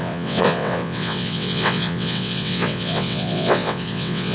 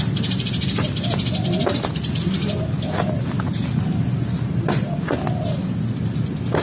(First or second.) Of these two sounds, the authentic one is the second